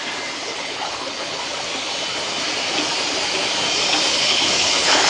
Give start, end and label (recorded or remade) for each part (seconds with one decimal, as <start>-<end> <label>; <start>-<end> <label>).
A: 0.0-0.5 recorded; 0.5-1.4 remade; 1.4-4.1 recorded; 4.1-5.1 remade